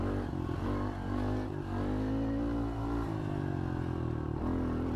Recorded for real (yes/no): yes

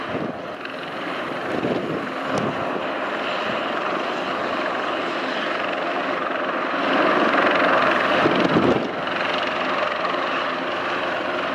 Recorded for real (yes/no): yes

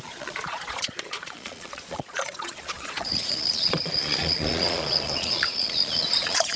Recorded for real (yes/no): no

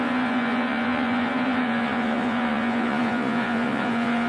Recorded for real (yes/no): no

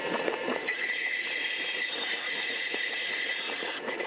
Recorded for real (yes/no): no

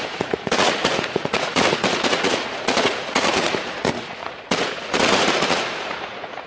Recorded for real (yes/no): no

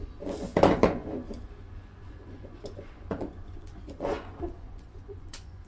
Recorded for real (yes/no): no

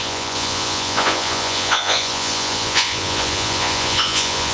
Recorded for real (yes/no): no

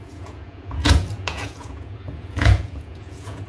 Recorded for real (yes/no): no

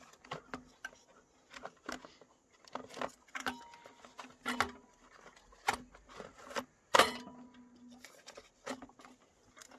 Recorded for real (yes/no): yes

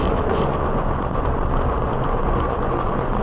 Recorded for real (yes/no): no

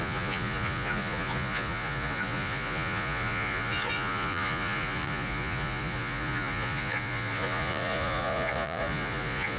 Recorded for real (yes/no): no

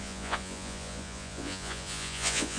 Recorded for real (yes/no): no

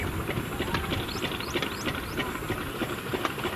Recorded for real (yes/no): yes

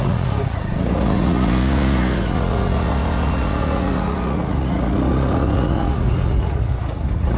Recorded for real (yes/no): no